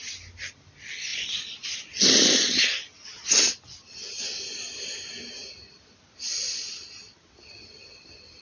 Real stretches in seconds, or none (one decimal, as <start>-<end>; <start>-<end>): 0.0-8.4